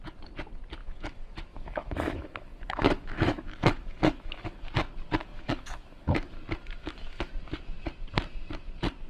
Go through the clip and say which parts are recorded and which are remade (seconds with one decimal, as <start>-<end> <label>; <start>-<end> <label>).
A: 0.0-0.8 recorded; 0.8-4.7 remade; 4.7-5.3 recorded; 5.3-6.3 remade; 6.3-6.8 recorded; 6.8-7.3 remade; 7.3-9.1 recorded